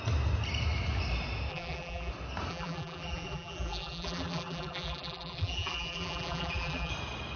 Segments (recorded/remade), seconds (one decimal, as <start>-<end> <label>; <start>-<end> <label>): 0.0-1.5 recorded; 1.5-2.1 remade; 2.1-2.5 recorded; 2.5-6.9 remade; 6.9-7.4 recorded